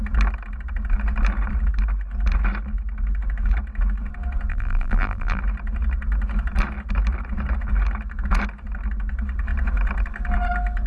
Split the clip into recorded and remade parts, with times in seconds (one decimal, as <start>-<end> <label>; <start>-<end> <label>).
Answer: 0.0-4.5 recorded; 4.5-5.4 remade; 5.4-10.9 recorded